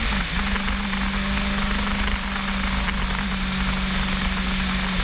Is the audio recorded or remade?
recorded